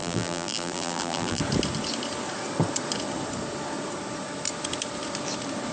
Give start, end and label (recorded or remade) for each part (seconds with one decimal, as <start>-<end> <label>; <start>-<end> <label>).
0.0-1.4 remade; 1.4-5.7 recorded